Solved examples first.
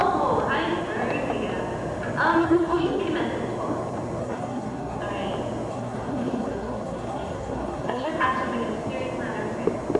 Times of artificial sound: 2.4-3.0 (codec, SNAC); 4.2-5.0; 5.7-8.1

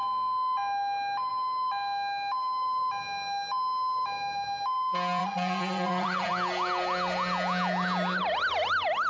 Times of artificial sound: 5.2-6.3 (vocoder, Vocos)

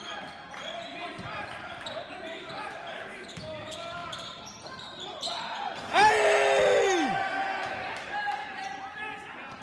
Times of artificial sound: 0.9-2.1 (vocoder, BigVGAN v2); 4.0-5.4

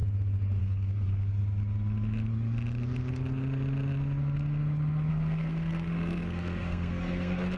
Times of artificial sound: 0.6-1.4 (codec, SNAC); 5.1-7.6

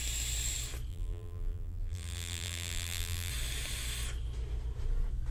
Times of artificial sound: 0.9-3.3 (vocoder, BigVGAN v2)

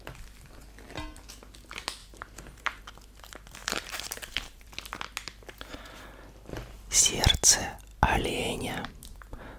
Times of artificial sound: 2.0-2.8 (vocoder, BigVGAN v2); 3.6-4.7; 6.5-7.0